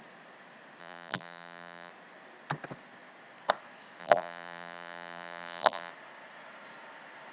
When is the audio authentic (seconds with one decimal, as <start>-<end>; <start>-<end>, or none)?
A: 0.0-0.8; 1.9-4.0; 5.9-7.3